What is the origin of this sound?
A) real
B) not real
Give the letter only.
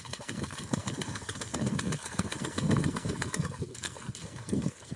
B